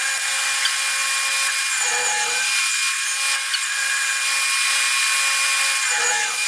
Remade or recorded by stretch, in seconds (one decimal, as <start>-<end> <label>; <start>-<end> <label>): 0.0-6.5 recorded